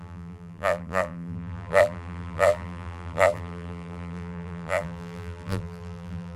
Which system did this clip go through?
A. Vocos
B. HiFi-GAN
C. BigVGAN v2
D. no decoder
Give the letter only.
C